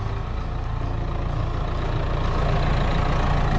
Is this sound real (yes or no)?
yes